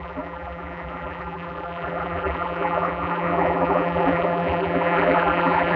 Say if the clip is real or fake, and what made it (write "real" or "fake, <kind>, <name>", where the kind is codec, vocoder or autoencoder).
fake, vocoder, BigVGAN v2